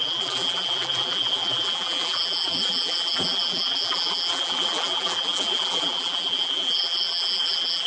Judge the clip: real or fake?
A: fake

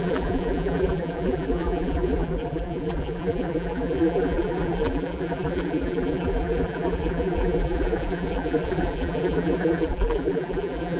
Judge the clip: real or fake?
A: fake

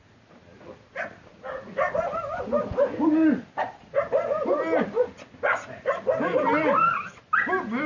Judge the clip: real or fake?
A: real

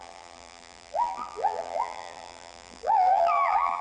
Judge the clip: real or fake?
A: fake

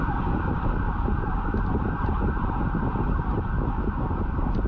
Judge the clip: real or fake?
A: real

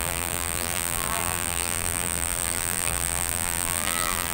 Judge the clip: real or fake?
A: fake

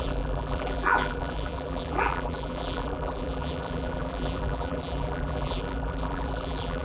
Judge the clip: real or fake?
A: fake